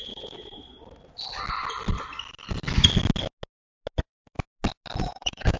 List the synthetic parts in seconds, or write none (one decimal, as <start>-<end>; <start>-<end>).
0.0-0.6; 4.0-4.4; 5.0-5.6